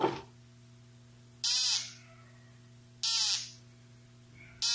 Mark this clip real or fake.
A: real